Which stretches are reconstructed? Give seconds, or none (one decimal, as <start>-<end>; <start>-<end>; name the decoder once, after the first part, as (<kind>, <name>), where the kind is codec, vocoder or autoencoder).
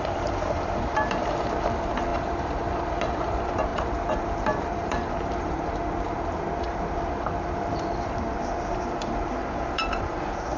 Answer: 0.0-10.6 (vocoder, BigVGAN v2)